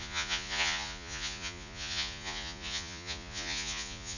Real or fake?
fake